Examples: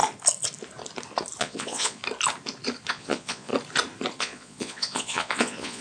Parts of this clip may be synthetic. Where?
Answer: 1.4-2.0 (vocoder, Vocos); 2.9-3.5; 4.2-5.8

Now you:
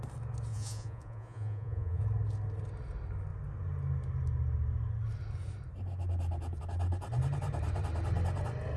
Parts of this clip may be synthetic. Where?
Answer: 0.5-2.0 (vocoder, Vocos)

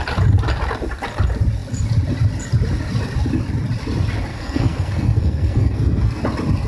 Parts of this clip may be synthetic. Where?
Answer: 4.3-6.2 (codec, SNAC)